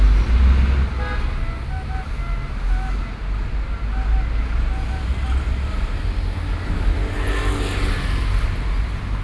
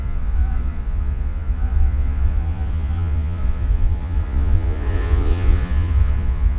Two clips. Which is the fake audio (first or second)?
second